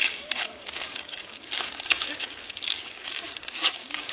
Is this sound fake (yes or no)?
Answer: yes